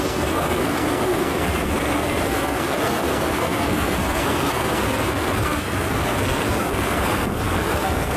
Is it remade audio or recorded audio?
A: remade